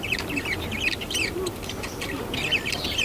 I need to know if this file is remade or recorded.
recorded